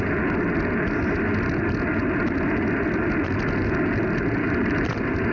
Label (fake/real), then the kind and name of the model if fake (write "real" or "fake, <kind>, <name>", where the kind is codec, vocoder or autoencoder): real